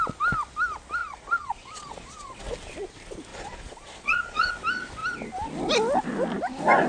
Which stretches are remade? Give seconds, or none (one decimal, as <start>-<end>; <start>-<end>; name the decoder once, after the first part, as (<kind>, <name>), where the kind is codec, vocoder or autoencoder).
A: 1.0-2.5 (vocoder, Vocos); 3.3-4.5